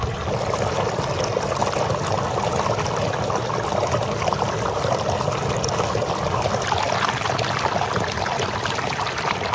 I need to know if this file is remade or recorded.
recorded